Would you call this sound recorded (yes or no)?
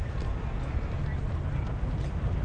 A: yes